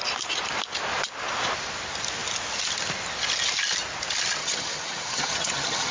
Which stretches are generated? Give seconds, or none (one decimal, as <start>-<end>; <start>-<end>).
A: 4.4-5.9